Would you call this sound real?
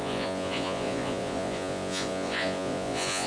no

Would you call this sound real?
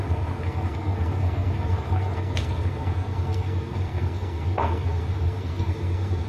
no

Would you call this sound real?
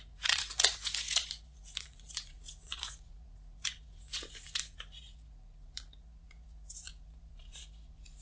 no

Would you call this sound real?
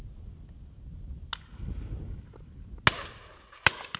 yes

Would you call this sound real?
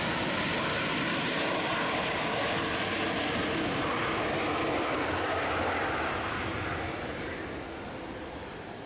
yes